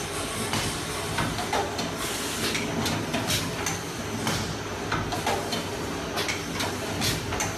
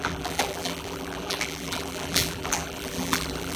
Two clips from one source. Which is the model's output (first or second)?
second